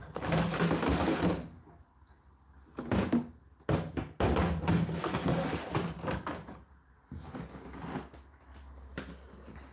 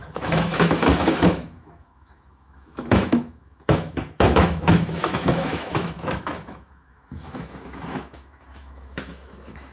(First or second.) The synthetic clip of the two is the second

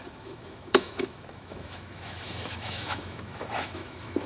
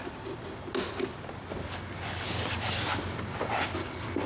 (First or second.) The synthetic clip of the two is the first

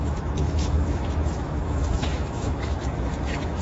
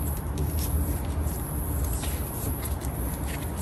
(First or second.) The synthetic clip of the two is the first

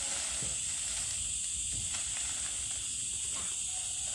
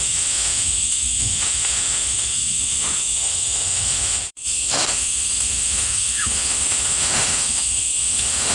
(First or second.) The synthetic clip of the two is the second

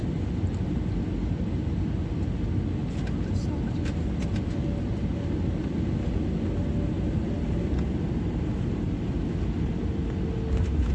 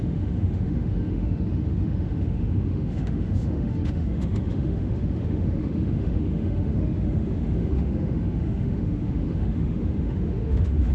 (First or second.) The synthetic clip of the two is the second